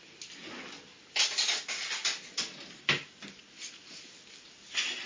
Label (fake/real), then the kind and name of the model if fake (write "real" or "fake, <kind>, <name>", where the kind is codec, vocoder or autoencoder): real